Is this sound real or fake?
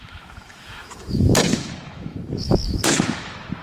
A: fake